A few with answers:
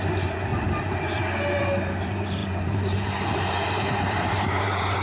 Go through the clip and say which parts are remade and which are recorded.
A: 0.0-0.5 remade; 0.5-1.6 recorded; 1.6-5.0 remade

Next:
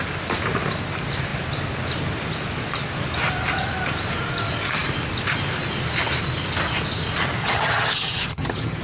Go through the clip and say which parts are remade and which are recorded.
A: 0.0-7.4 recorded; 7.4-8.8 remade

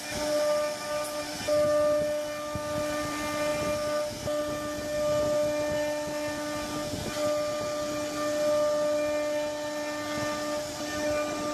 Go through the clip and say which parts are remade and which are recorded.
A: 0.0-11.5 recorded

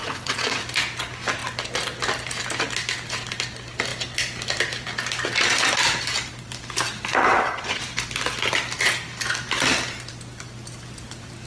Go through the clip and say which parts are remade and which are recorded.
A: 0.0-0.6 remade; 0.6-7.2 recorded; 7.2-7.8 remade; 7.8-11.5 recorded